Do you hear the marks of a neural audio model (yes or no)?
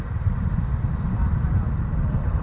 no